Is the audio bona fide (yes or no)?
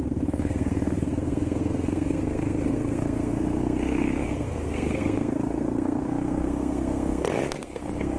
no